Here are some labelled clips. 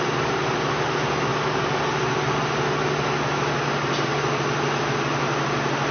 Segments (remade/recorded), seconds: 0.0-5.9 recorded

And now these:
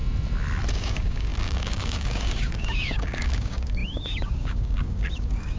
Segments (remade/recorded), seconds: 0.0-0.7 recorded; 0.7-5.6 remade

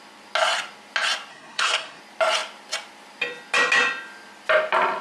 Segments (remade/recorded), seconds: 0.0-1.3 recorded; 1.3-2.0 remade; 2.0-5.0 recorded

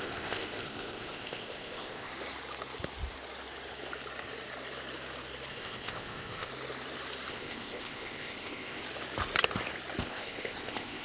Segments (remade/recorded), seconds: 0.0-2.1 remade; 2.1-5.5 recorded; 5.5-6.5 remade; 6.5-7.3 recorded; 7.3-8.8 remade; 8.8-10.0 recorded; 10.0-11.0 remade

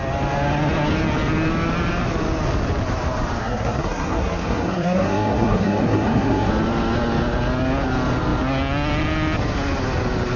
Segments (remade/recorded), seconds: 0.0-3.4 recorded; 3.4-6.5 remade; 6.5-10.4 recorded

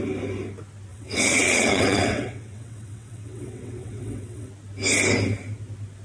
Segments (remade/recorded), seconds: 0.0-0.9 recorded; 0.9-4.5 remade; 4.5-6.0 recorded

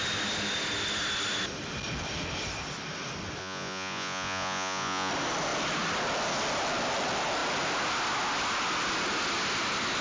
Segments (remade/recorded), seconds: 0.0-3.4 recorded; 3.4-5.1 remade; 5.1-10.0 recorded

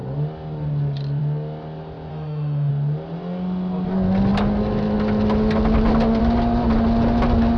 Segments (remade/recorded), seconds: 0.0-2.1 recorded; 2.1-2.7 remade; 2.7-7.6 recorded